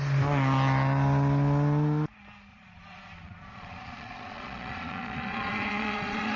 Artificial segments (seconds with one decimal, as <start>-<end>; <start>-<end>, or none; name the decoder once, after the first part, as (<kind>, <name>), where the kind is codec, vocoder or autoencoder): 2.5-6.4 (vocoder, Vocos)